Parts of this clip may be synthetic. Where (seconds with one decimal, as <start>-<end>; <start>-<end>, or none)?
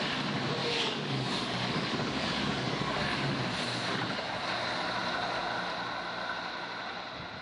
0.6-3.4